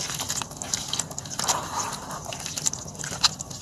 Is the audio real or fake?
real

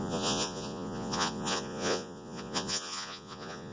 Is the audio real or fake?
fake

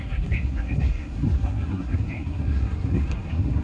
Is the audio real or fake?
fake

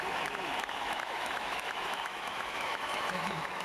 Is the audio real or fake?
fake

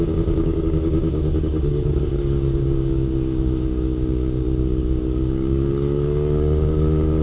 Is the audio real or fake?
fake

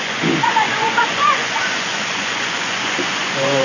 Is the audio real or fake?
fake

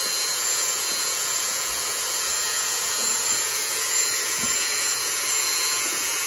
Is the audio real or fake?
fake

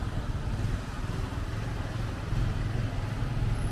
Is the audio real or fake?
real